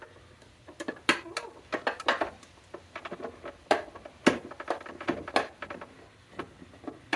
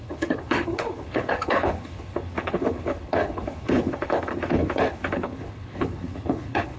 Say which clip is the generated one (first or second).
second